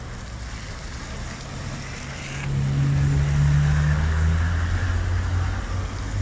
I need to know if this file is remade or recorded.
recorded